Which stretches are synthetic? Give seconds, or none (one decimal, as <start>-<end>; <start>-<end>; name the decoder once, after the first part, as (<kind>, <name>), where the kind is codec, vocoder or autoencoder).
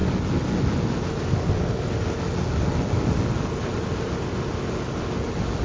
none